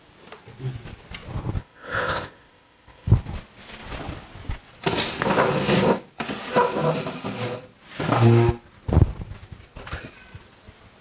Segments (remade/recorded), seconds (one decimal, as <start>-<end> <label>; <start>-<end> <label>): 0.0-1.6 recorded; 1.6-3.1 remade; 3.1-11.0 recorded